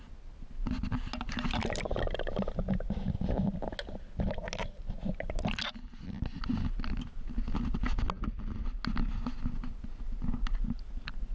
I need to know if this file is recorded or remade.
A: recorded